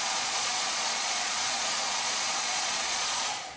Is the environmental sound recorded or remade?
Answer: remade